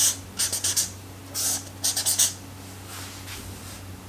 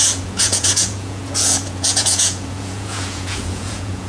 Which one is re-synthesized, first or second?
second